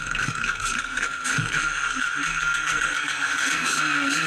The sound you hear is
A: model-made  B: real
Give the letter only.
A